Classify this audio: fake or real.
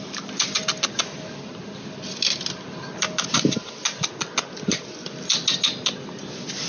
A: real